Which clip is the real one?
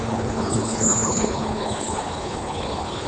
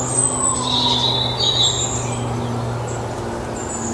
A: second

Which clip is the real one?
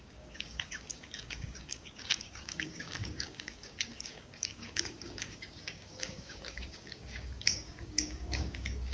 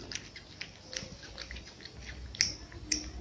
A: second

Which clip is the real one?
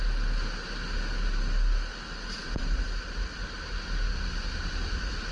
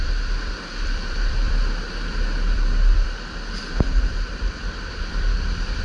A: first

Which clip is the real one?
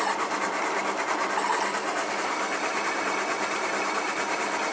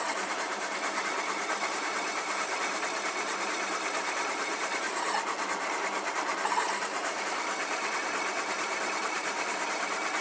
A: first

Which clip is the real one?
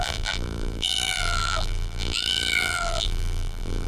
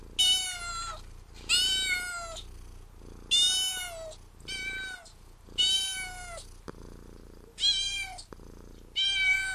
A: second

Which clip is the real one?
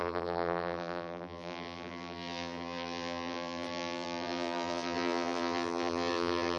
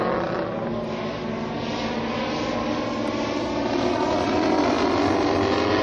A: second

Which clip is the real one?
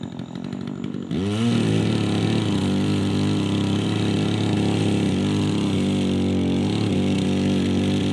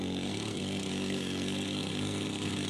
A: first